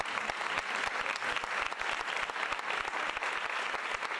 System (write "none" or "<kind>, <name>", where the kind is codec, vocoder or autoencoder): none